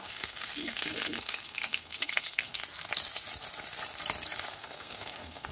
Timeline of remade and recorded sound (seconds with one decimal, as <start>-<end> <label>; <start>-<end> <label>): 0.0-2.6 remade; 2.6-4.5 recorded; 4.5-5.5 remade